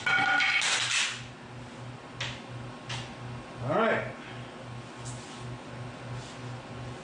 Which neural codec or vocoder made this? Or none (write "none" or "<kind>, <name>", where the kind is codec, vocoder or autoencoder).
none